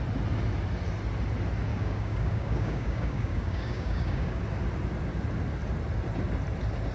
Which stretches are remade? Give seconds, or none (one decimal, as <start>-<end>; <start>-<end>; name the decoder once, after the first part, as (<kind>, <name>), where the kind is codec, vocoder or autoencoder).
1.7-4.4 (codec, DAC)